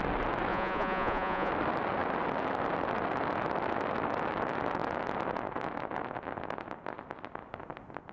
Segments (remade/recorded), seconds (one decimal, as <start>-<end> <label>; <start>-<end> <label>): 0.0-0.5 recorded; 0.5-1.5 remade; 1.5-8.1 recorded